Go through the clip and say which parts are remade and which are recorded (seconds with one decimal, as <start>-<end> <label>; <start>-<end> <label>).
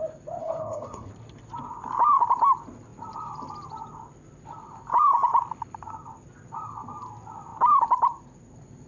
0.0-0.4 recorded; 0.4-1.1 remade; 1.1-8.9 recorded